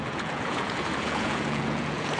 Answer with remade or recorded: remade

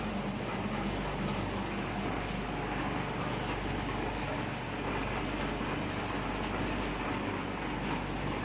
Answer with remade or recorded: recorded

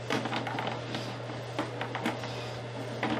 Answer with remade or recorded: recorded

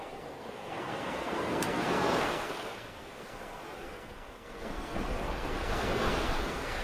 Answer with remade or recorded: remade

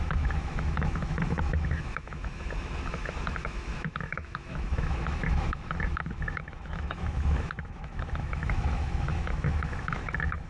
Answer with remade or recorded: remade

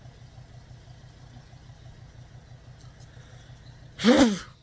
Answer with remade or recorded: recorded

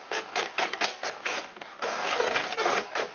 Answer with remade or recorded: remade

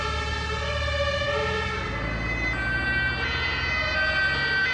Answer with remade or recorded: recorded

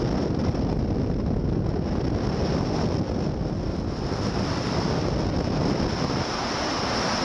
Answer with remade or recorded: recorded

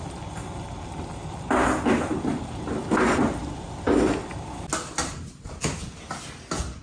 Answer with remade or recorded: recorded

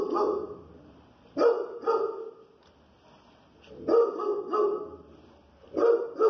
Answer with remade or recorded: recorded